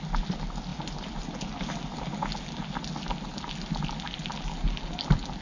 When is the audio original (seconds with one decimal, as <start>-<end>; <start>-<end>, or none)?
0.0-5.4